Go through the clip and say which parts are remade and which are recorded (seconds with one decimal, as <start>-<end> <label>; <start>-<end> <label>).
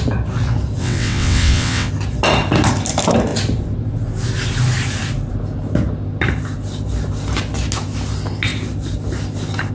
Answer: 0.0-0.8 recorded; 0.8-1.9 remade; 1.9-9.7 recorded